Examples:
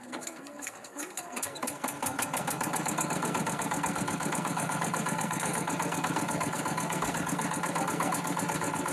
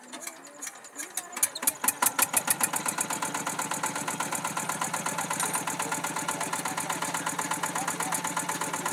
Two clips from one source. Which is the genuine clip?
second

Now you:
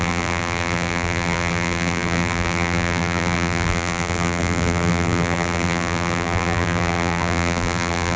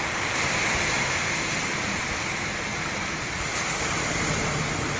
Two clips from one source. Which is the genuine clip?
second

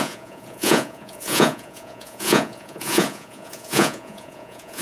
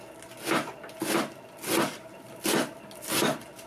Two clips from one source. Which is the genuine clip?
second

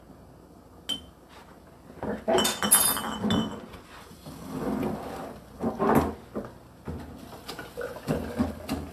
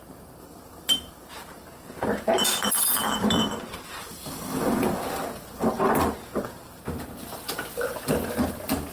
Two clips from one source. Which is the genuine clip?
first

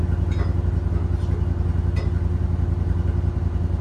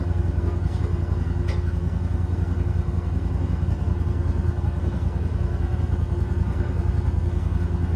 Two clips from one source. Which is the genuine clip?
first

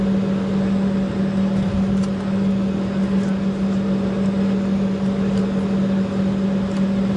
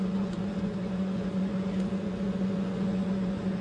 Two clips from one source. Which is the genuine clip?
first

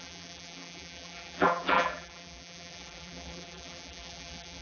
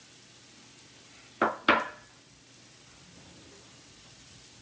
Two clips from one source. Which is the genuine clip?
second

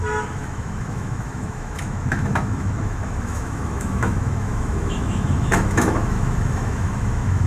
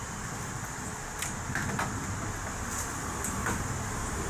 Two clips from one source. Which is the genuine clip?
second